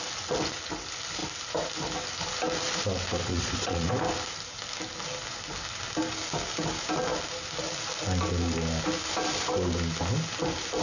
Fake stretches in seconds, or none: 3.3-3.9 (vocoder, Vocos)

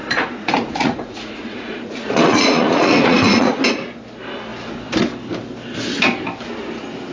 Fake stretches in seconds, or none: 0.0-3.6 (vocoder, Vocos)

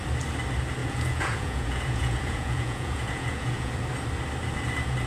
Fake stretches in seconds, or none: 0.8-3.7 (vocoder, Vocos)

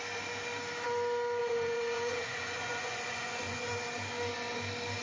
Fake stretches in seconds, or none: 1.4-3.7 (vocoder, Vocos)